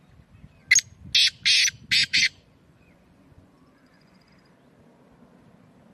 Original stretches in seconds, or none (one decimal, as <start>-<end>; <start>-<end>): 0.0-2.0; 4.3-5.9